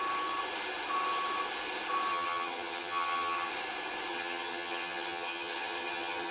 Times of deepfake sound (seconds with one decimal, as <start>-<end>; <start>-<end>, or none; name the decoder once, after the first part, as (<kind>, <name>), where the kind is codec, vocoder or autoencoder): 2.1-3.5 (vocoder, HiFi-GAN); 4.1-6.3